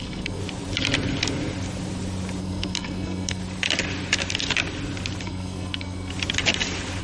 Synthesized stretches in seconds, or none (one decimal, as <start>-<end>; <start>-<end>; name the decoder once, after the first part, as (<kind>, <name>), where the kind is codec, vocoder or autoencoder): 0.0-0.4 (codec, SNAC); 2.4-3.4; 5.2-6.1